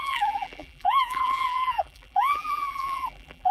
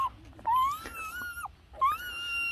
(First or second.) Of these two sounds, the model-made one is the first